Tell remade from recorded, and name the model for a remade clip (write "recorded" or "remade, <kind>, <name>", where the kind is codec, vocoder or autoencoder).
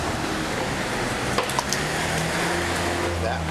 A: recorded